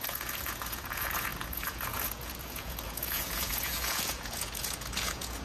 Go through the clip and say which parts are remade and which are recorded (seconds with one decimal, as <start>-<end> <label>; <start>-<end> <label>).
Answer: 0.0-5.4 remade